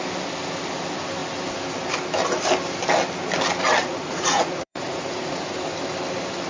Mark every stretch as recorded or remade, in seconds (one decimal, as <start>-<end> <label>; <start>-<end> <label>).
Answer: 0.0-3.8 recorded; 3.8-5.4 remade; 5.4-6.5 recorded